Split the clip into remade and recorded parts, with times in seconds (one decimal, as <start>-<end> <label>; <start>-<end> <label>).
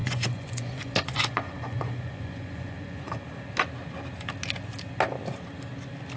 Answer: 0.0-3.1 remade; 3.1-6.2 recorded